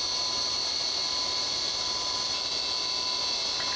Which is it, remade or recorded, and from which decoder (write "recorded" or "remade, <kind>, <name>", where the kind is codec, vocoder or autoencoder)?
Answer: recorded